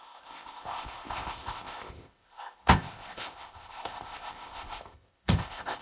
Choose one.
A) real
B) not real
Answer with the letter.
B